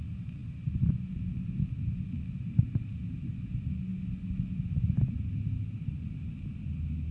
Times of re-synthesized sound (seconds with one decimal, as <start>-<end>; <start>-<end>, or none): none